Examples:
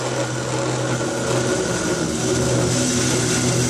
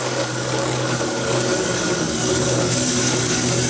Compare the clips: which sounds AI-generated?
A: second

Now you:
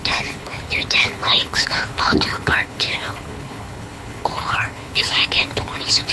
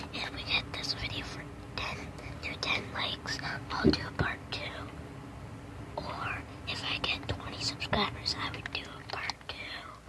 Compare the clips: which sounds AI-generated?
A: first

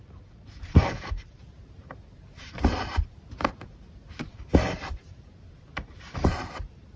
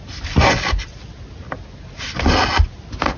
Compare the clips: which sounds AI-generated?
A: first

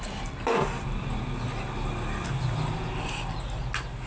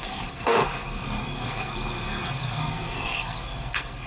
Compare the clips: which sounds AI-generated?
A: second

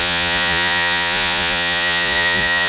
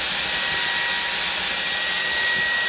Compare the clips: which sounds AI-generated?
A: first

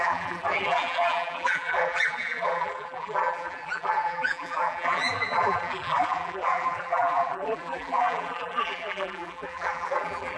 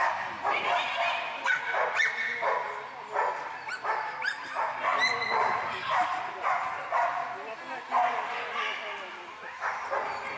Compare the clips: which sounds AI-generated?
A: first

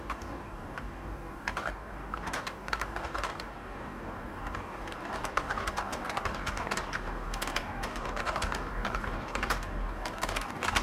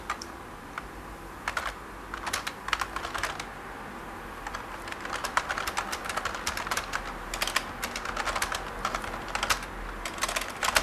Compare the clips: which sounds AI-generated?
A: first